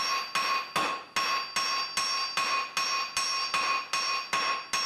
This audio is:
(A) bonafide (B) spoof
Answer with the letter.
A